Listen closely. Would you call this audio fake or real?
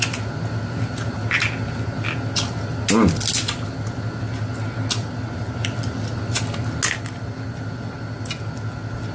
real